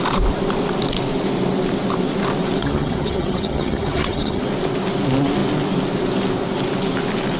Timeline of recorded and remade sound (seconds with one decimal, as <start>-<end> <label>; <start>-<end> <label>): 0.0-2.6 recorded; 2.6-4.4 remade; 4.4-7.4 recorded